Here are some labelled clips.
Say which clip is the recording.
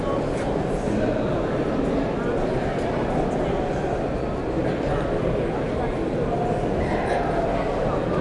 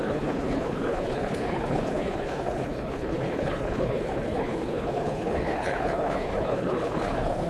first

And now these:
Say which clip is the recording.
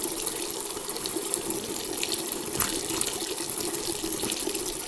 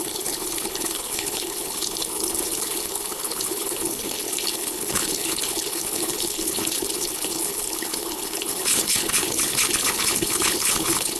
first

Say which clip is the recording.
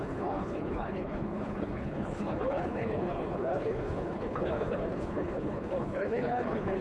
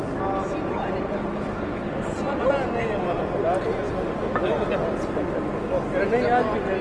second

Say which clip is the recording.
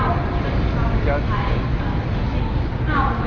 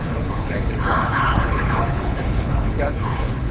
first